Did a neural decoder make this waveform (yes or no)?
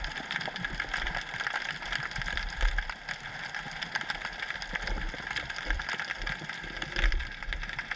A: no